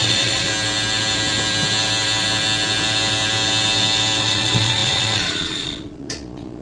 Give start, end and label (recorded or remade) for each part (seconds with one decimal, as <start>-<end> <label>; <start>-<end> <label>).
0.0-0.5 remade; 0.5-4.2 recorded; 4.2-6.6 remade